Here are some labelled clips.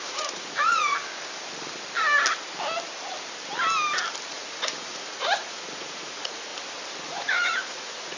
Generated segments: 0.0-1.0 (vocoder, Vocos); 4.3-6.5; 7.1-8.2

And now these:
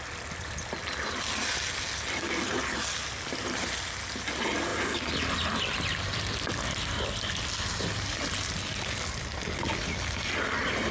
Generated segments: none

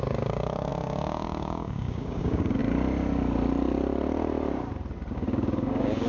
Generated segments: 0.0-2.6 (codec, DAC); 5.1-6.1

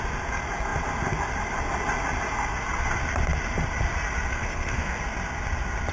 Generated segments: 4.3-5.0 (codec, SNAC)

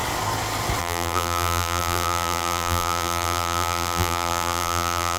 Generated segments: 0.8-5.2 (vocoder, BigVGAN v2)